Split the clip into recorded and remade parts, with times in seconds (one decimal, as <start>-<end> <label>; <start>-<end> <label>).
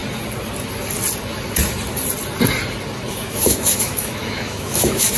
0.0-3.1 recorded; 3.1-5.2 remade